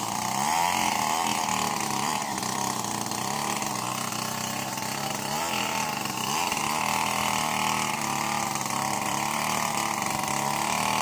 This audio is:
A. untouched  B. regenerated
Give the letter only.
B